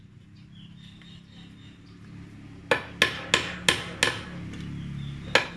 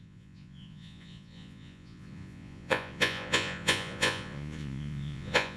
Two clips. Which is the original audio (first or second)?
first